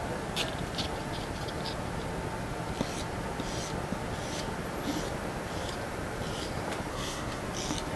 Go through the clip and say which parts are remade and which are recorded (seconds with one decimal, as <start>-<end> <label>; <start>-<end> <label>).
0.0-6.9 recorded; 6.9-7.4 remade; 7.4-8.0 recorded